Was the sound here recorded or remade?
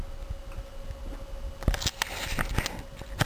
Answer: recorded